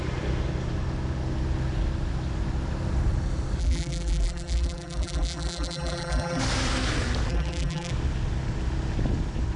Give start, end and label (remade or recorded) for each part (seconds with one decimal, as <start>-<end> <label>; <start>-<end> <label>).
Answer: 0.0-3.6 recorded; 3.6-6.4 remade; 6.4-7.3 recorded; 7.3-7.9 remade; 7.9-9.6 recorded